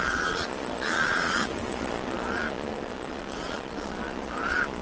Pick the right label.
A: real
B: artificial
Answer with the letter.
B